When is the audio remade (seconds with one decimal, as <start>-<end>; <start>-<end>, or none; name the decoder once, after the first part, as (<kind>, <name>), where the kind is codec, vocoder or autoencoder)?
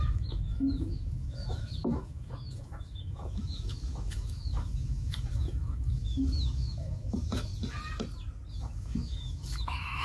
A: 0.0-7.5 (autoencoder, DAC-VAE); 8.5-10.0